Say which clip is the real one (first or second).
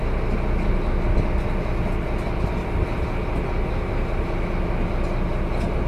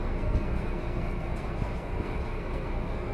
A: first